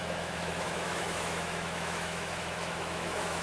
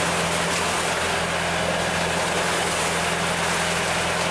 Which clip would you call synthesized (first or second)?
first